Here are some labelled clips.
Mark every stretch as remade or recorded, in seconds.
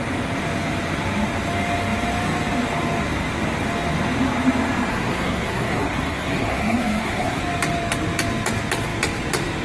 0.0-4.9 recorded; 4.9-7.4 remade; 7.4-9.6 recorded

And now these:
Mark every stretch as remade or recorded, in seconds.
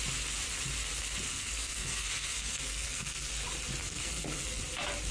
0.0-1.3 recorded; 1.3-3.3 remade; 3.3-3.8 recorded; 3.8-4.6 remade; 4.6-5.1 recorded